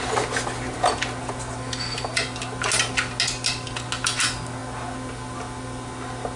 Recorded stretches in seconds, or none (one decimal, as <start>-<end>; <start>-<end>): 0.0-6.4